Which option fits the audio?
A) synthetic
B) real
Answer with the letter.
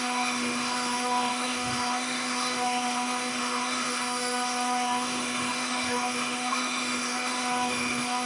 A